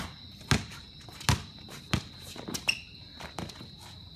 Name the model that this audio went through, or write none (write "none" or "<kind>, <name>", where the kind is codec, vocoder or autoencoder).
none